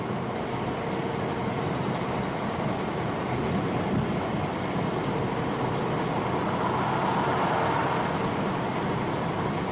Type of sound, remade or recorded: recorded